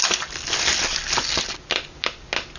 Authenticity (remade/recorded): recorded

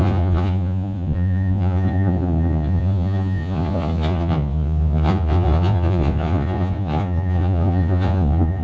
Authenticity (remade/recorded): remade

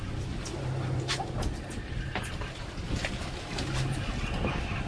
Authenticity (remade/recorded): recorded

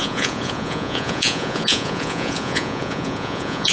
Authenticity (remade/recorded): remade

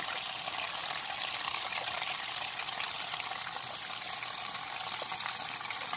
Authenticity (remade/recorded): recorded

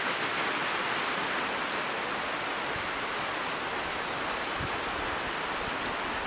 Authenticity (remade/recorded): recorded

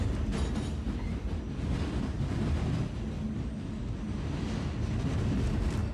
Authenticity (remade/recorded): recorded